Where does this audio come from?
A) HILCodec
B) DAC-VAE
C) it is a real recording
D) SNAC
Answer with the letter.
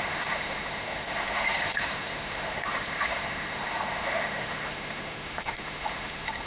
B